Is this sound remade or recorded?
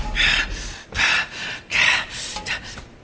recorded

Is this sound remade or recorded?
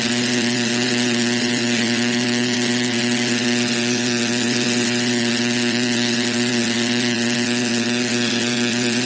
remade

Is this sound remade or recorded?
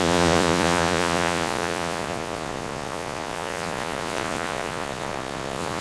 remade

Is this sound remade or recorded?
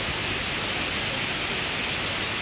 recorded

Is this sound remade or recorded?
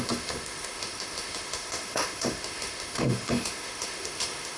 remade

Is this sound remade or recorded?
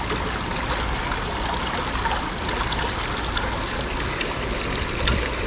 recorded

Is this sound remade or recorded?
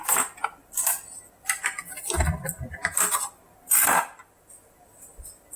remade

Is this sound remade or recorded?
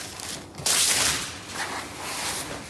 recorded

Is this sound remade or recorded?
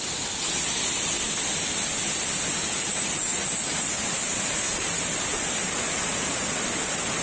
recorded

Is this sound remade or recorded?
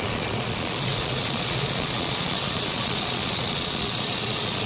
remade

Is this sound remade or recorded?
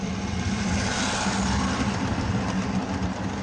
recorded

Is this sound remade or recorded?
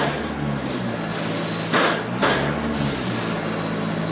recorded